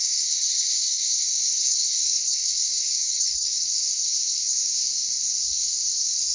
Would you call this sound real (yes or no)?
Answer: no